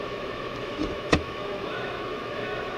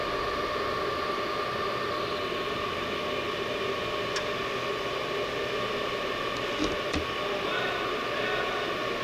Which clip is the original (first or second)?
second